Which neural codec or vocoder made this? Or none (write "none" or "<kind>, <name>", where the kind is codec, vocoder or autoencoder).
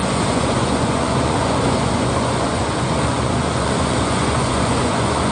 vocoder, Vocos